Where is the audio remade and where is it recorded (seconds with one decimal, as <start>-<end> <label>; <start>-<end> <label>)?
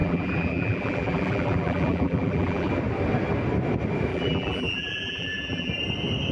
0.0-2.7 remade; 2.7-4.1 recorded; 4.1-5.7 remade; 5.7-6.3 recorded